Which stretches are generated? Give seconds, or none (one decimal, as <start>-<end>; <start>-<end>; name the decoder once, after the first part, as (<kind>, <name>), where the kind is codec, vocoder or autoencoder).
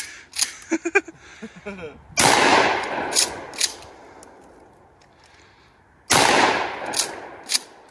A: 2.5-3.4 (vocoder, Vocos)